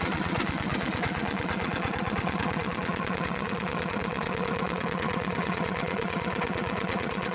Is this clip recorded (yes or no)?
no